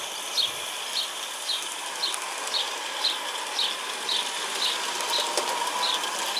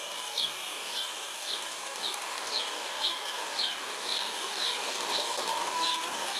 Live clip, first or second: first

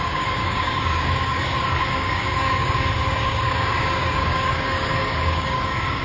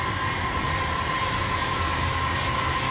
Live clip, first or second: second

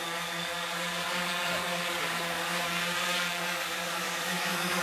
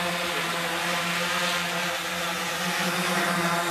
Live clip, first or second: second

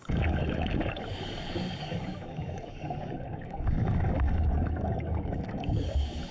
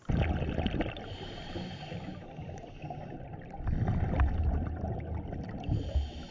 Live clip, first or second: second